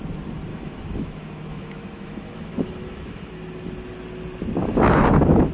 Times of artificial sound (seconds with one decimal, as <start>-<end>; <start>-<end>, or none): 0.5-3.3; 4.6-5.5